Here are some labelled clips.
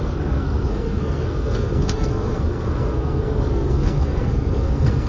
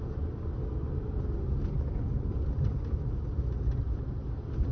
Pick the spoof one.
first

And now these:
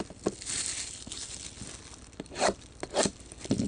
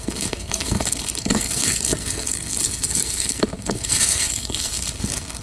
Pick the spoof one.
second